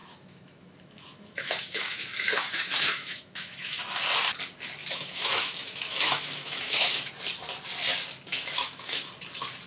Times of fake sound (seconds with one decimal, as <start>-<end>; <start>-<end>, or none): 0.0-3.8; 4.8-7.1; 8.3-9.1